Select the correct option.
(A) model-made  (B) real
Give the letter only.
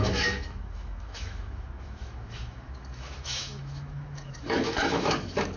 A